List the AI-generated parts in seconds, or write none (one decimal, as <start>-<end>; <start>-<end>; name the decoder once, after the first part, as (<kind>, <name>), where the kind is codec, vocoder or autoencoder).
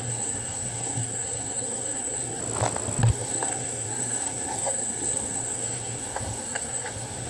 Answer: 0.0-2.4 (codec, SNAC); 3.1-7.3